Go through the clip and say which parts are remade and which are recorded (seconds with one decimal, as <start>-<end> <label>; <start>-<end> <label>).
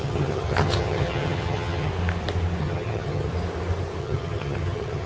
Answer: 0.0-1.9 remade; 1.9-2.6 recorded; 2.6-3.3 remade; 3.3-4.0 recorded; 4.0-5.1 remade